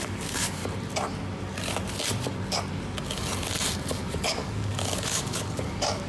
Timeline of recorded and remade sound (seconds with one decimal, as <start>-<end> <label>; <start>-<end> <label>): 0.0-0.6 remade; 0.6-3.9 recorded; 3.9-6.1 remade